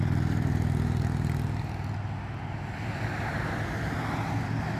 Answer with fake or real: real